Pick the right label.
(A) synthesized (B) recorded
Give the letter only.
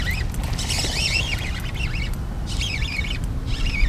B